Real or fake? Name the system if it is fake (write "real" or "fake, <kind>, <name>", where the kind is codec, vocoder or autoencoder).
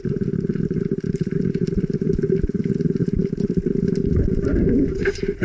fake, vocoder, BigVGAN v2